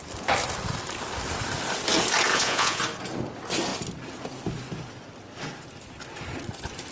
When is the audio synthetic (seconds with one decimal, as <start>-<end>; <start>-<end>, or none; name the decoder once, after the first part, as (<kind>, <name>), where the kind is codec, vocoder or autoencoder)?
2.3-2.8 (vocoder, Vocos)